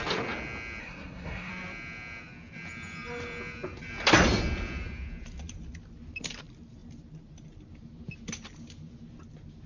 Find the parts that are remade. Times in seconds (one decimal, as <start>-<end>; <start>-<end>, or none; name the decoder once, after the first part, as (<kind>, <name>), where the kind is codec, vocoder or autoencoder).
0.8-1.5 (codec, SNAC)